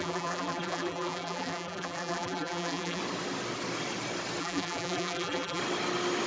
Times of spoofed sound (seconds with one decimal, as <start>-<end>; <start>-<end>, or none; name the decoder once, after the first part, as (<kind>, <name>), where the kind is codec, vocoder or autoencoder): 0.0-3.0 (vocoder, BigVGAN v2); 4.4-5.6